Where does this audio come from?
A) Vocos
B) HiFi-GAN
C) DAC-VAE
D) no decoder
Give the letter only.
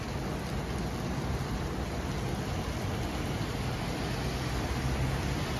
D